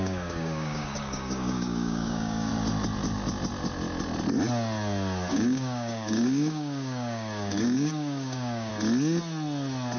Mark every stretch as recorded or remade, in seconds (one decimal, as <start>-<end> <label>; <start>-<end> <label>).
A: 0.0-2.5 remade; 2.5-5.3 recorded; 5.3-8.7 remade; 8.7-10.0 recorded

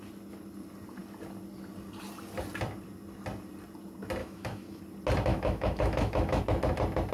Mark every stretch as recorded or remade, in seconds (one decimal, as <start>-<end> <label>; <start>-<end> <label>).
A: 0.0-4.2 recorded; 4.2-4.8 remade; 4.8-5.3 recorded; 5.3-6.4 remade; 6.4-7.1 recorded

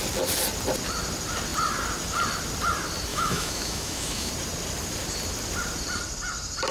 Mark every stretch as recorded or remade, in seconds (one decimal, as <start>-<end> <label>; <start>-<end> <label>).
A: 0.0-3.1 recorded; 3.1-4.3 remade; 4.3-6.7 recorded